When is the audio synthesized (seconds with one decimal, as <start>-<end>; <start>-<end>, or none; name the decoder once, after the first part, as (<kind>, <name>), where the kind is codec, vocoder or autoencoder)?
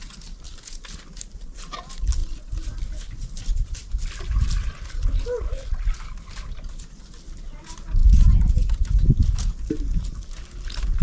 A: none